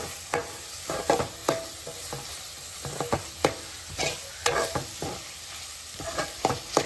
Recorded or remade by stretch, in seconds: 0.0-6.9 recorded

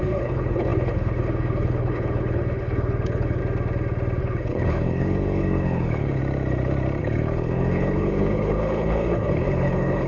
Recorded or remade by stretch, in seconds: 0.0-3.4 remade; 3.4-4.2 recorded; 4.2-6.2 remade; 6.2-7.0 recorded; 7.0-10.1 remade

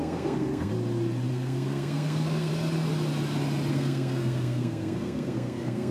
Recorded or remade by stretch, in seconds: 0.0-0.7 remade; 0.7-1.3 recorded; 1.3-2.5 remade; 2.5-3.7 recorded; 3.7-5.9 remade

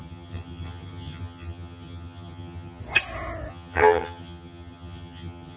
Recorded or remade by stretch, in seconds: 0.0-2.8 remade; 2.8-3.5 recorded; 3.5-5.6 remade

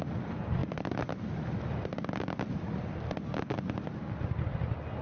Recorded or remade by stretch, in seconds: 0.0-5.0 recorded

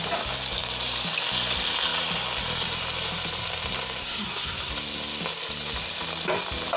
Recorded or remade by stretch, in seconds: 0.0-4.0 recorded; 4.0-4.7 remade; 4.7-6.8 recorded

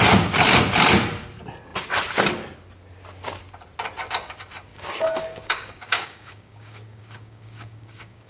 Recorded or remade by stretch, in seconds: 0.0-4.7 recorded; 4.7-8.3 remade